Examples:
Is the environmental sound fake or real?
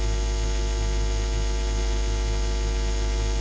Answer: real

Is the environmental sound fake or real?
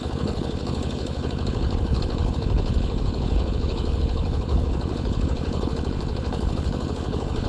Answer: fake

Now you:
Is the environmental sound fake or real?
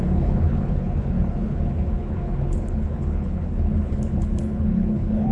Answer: fake